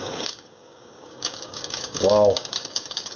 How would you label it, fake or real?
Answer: fake